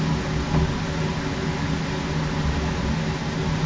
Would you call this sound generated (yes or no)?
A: no